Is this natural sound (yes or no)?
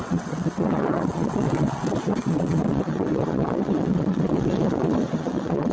no